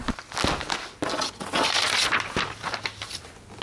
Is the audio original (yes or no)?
yes